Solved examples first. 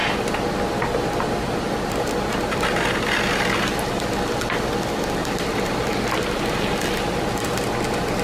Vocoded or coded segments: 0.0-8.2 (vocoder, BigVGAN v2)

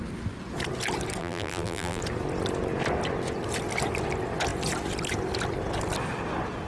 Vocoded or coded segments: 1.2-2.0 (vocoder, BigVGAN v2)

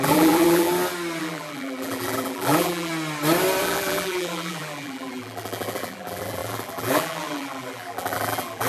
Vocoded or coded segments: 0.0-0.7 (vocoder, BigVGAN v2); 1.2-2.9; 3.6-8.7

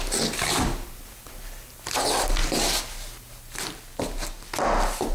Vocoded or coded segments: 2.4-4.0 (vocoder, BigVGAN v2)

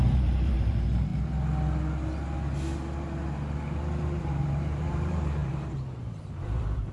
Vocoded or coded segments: 0.0-1.1 (vocoder, BigVGAN v2); 4.2-6.9

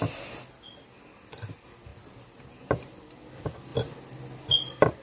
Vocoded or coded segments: none

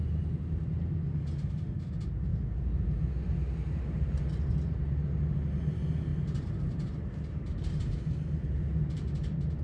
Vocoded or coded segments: 2.3-4.5 (vocoder, BigVGAN v2); 6.1-9.0

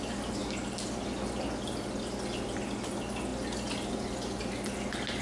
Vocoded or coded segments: none